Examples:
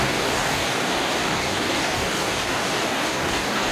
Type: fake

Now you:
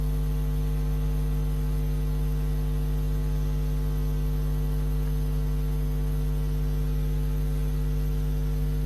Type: real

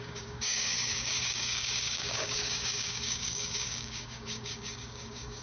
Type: fake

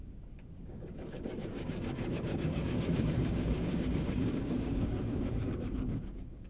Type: fake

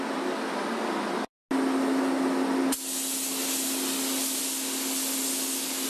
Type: real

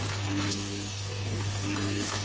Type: fake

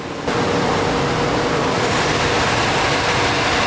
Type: real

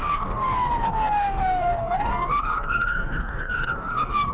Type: fake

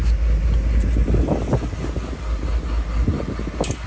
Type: real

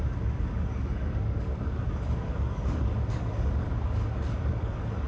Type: fake